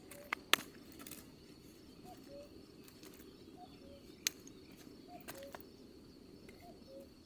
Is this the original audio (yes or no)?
yes